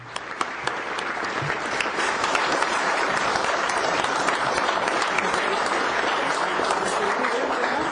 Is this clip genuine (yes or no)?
no